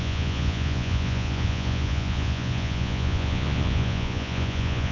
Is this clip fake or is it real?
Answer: fake